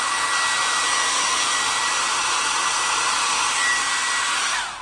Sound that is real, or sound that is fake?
real